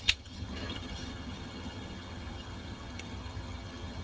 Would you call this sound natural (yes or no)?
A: no